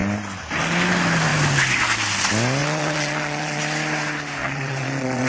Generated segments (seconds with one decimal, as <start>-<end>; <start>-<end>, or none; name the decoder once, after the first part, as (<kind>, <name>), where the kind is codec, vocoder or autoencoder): 2.6-3.6 (vocoder, WaveNeXt); 4.4-5.3